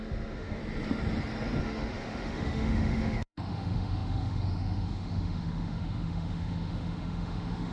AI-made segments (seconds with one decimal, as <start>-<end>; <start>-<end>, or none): 0.0-0.6; 1.6-7.7